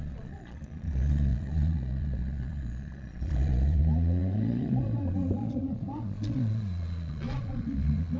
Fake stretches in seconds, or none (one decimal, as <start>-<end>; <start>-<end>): 0.0-8.2